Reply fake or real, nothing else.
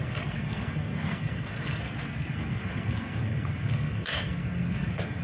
fake